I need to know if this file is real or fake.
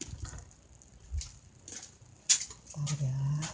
real